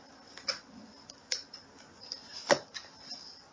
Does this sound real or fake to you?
real